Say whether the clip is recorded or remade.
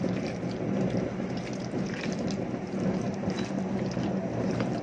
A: remade